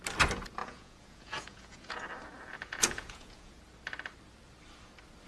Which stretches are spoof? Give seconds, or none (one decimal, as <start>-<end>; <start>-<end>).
0.6-2.0; 2.5-3.6